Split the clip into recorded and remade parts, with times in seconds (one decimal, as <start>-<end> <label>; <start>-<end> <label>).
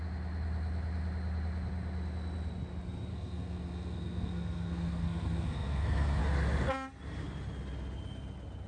0.0-3.1 recorded; 3.1-6.2 remade; 6.2-8.7 recorded